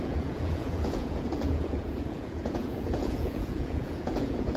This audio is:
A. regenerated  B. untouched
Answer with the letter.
A